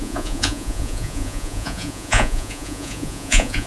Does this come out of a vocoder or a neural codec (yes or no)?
yes